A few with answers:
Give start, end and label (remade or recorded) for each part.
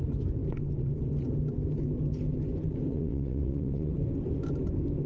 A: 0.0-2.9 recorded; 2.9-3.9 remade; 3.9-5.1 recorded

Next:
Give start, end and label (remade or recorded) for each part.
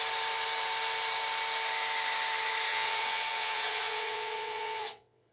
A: 0.0-2.7 recorded; 2.7-5.3 remade